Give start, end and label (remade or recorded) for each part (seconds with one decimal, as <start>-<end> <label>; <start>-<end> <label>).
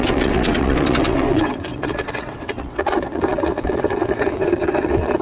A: 0.0-5.2 remade